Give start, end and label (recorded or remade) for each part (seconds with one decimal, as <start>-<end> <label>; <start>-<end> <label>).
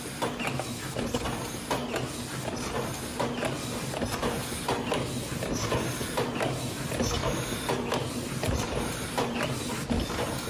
0.0-7.2 recorded; 7.2-9.7 remade; 9.7-10.5 recorded